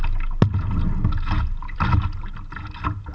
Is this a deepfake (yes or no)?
no